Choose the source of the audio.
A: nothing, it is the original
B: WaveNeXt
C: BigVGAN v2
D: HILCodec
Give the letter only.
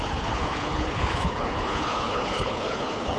D